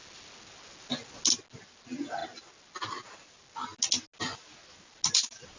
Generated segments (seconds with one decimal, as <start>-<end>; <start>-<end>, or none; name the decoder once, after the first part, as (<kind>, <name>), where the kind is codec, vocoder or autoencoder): none